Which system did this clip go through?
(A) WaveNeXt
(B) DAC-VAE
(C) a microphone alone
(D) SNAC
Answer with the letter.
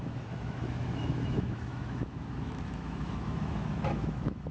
B